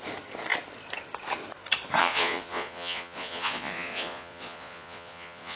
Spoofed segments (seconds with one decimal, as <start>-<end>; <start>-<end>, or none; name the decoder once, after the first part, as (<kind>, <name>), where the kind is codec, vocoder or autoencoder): 2.0-5.6 (vocoder, Vocos)